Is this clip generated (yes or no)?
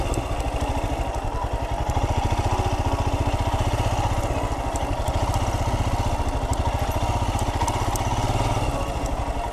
no